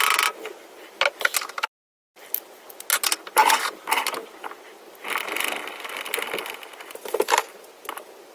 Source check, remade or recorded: recorded